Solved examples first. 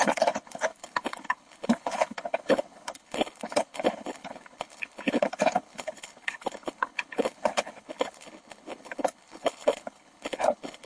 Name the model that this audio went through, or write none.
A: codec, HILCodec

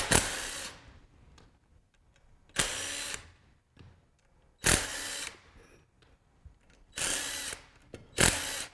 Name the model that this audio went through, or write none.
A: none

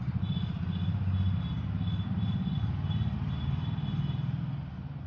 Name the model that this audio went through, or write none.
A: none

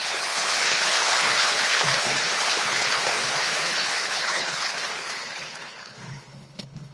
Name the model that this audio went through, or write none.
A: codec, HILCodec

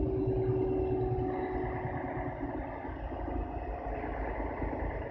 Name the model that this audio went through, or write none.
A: none